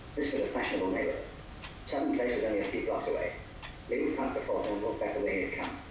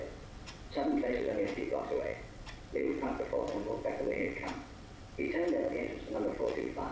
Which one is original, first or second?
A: first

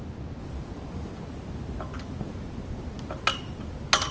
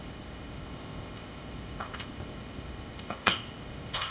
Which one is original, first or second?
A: first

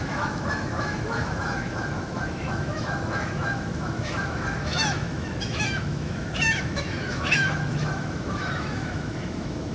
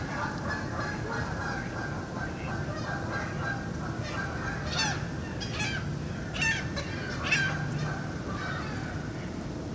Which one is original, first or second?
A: second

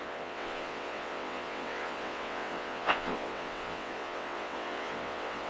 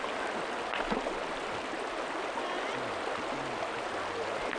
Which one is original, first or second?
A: second